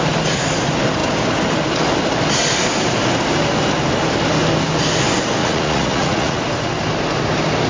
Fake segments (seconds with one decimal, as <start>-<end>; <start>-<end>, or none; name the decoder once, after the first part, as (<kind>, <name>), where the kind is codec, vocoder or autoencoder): 5.4-6.4 (vocoder, Vocos)